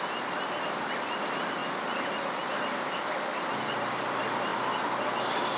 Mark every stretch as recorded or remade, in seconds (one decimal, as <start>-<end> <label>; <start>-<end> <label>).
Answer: 0.0-5.6 recorded